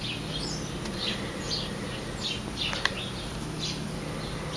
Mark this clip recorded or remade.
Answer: recorded